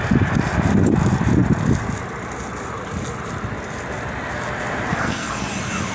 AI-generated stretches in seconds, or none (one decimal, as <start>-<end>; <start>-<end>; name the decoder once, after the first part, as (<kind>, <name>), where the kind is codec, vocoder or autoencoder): 4.9-5.5 (codec, SNAC)